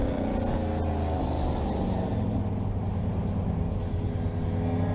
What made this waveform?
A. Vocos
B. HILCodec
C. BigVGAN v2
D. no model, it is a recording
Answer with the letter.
D